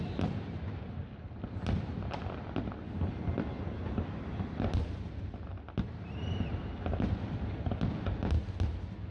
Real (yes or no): yes